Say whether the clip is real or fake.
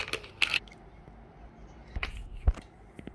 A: real